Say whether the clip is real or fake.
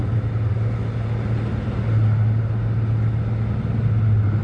real